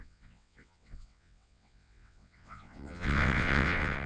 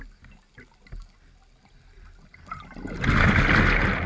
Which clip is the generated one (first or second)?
first